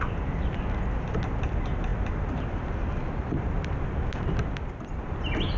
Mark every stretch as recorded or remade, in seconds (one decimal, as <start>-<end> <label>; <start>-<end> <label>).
0.0-5.6 recorded